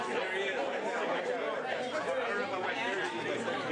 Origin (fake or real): real